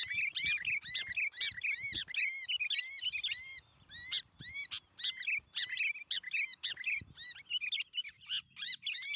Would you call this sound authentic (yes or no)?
yes